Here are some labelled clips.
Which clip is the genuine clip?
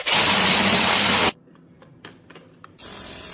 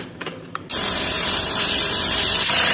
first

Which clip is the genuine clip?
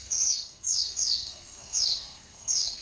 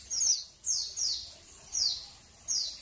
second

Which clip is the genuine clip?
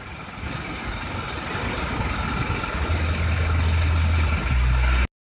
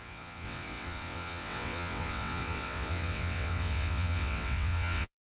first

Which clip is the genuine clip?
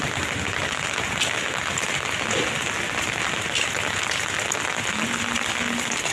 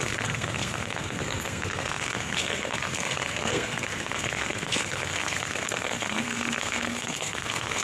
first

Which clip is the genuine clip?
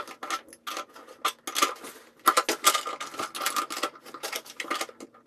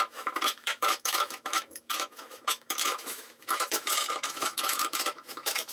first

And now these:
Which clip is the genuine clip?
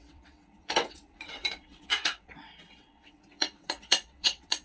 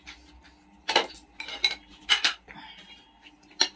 second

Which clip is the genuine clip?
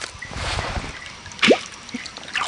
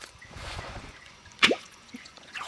first